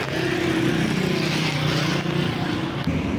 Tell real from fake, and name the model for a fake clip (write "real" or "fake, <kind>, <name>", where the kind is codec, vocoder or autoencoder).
real